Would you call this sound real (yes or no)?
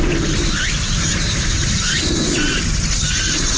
yes